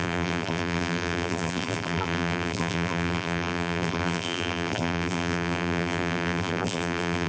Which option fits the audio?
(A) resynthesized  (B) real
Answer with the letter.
A